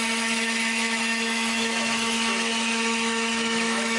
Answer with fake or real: fake